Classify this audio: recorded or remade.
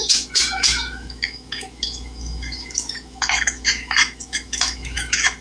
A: remade